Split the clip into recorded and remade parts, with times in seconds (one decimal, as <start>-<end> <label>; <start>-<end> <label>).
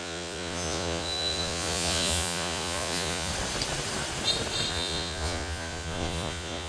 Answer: 0.0-3.3 remade; 3.3-4.7 recorded; 4.7-6.7 remade